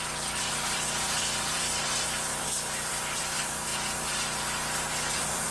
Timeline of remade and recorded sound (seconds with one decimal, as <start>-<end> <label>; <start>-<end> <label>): 0.0-3.7 remade; 3.7-5.1 recorded; 5.1-5.5 remade